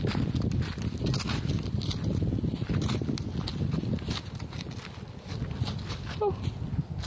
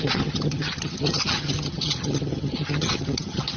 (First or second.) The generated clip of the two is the second